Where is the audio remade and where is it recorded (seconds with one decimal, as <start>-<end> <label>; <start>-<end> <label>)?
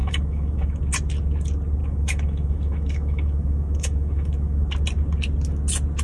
0.0-0.8 remade; 0.8-1.8 recorded; 1.8-4.7 remade; 4.7-6.0 recorded